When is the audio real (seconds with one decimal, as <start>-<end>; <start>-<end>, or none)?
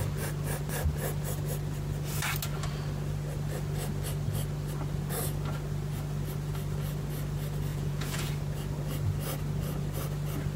0.0-7.7; 8.3-10.6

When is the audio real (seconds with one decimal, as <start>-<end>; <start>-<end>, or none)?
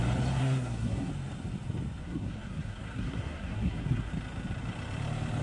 0.0-0.4; 1.1-2.0; 4.1-5.4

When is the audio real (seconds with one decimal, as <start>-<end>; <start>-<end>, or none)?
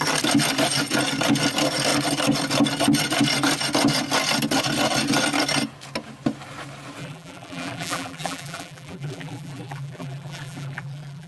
0.0-7.0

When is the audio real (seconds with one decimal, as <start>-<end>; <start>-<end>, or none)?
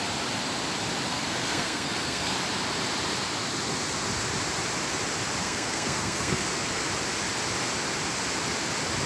0.0-1.1; 2.3-5.4; 6.8-9.1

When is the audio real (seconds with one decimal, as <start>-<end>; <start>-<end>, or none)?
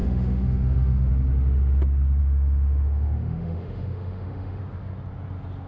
1.1-2.2; 4.6-5.7